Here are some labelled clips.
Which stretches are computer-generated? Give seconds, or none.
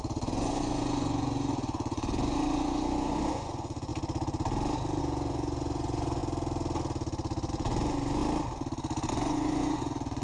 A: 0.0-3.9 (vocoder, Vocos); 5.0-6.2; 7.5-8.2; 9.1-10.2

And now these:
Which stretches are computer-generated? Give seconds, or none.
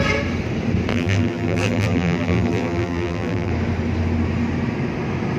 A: 0.9-3.5 (vocoder, BigVGAN v2)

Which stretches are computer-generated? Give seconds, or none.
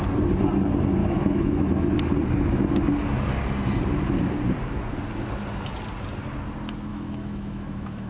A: 1.0-1.7 (autoencoder, DAC-VAE); 6.9-8.1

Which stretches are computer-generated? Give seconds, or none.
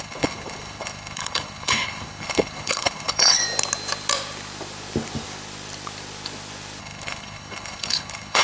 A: 0.0-3.4 (codec, HILCodec); 6.8-8.4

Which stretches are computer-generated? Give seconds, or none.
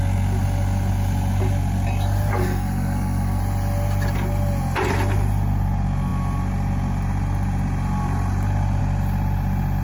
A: 2.3-3.4 (codec, SNAC)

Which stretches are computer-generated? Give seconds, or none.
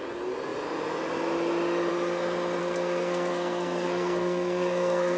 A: 2.6-5.2 (codec, SNAC)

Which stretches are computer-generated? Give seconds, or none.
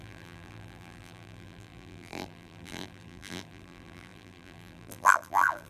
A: 0.0-5.7 (vocoder, BigVGAN v2)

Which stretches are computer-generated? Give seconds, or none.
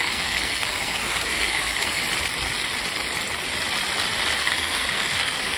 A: 0.0-2.0 (codec, SNAC); 4.4-5.6